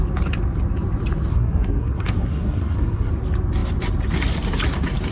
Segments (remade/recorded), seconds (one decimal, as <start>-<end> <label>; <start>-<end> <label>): 0.0-1.3 recorded; 1.3-3.1 remade; 3.1-5.1 recorded